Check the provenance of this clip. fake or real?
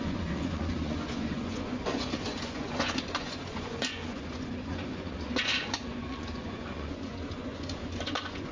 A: fake